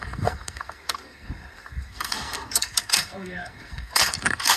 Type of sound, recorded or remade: remade